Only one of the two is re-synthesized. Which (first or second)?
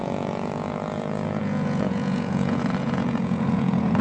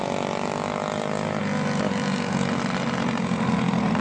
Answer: first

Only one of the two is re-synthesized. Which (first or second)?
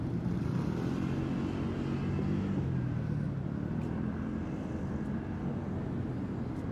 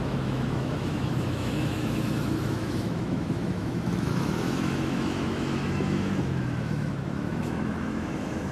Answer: second